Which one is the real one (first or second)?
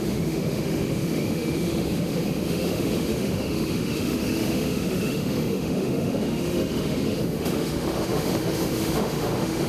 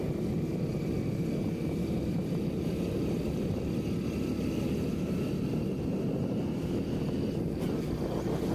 second